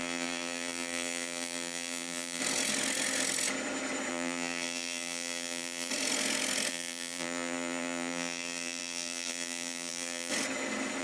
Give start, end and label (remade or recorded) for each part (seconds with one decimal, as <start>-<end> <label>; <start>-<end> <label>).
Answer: 0.0-2.4 remade; 2.4-4.1 recorded; 4.1-5.9 remade; 5.9-6.7 recorded; 6.7-10.3 remade; 10.3-11.0 recorded